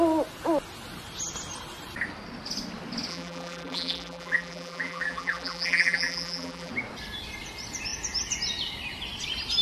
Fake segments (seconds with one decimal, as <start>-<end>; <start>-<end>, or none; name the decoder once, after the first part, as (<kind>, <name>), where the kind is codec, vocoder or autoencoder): 3.1-6.7 (vocoder, BigVGAN v2)